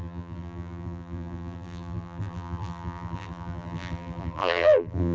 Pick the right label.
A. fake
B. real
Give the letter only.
A